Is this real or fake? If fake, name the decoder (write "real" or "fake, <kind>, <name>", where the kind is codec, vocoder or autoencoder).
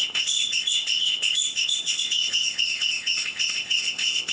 fake, codec, ZipCodec